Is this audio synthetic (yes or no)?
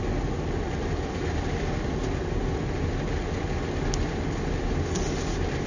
no